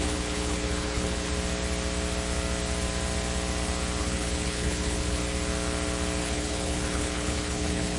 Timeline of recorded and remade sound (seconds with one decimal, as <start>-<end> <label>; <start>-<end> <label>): 0.0-1.3 remade; 1.3-4.0 recorded; 4.0-5.2 remade; 5.2-6.2 recorded; 6.2-8.0 remade